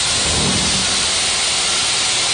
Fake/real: real